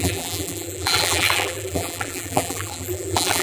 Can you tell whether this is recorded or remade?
remade